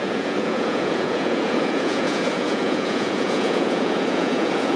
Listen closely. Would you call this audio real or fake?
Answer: fake